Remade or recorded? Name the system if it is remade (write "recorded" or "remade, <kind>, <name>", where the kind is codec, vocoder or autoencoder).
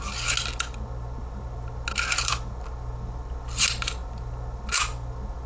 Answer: recorded